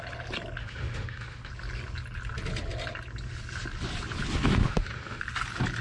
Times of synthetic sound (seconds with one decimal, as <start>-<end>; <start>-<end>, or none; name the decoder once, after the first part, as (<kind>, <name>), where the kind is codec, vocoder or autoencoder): 0.6-1.5 (autoencoder, DAC-VAE); 4.6-5.2